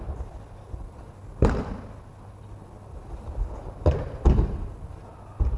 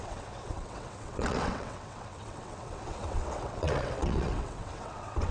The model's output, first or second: second